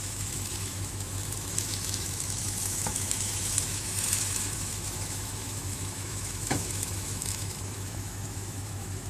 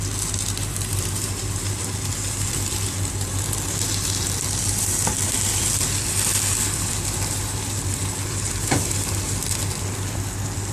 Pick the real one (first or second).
second